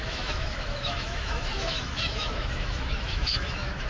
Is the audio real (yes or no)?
no